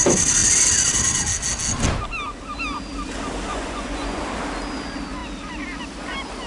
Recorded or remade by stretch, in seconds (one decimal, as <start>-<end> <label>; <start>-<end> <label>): 0.0-3.5 recorded; 3.5-4.2 remade; 4.2-6.5 recorded